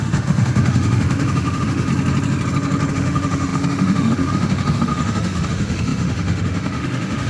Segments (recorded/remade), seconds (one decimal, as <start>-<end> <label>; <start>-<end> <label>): 0.0-1.9 remade; 1.9-2.9 recorded; 2.9-7.3 remade